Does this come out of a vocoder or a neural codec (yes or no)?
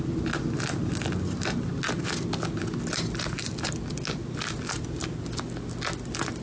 no